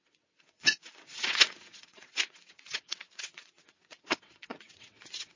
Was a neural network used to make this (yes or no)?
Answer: yes